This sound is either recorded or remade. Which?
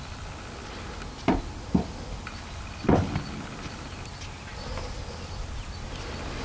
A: recorded